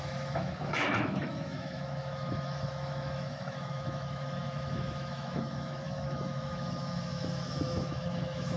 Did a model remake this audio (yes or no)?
yes